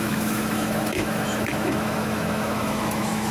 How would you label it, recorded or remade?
remade